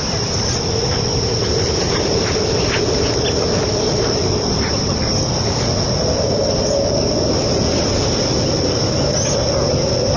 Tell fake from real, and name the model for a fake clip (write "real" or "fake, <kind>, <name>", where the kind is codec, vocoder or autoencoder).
real